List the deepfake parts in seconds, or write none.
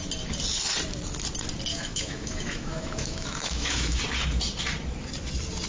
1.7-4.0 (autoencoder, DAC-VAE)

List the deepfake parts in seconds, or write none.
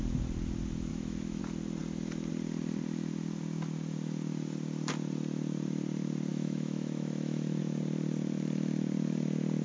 0.9-1.4 (autoencoder, DAC-VAE); 6.3-7.6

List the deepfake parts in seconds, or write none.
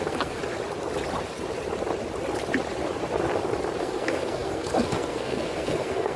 0.0-0.4 (codec, SNAC); 3.8-6.2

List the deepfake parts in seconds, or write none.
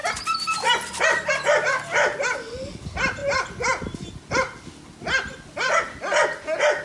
none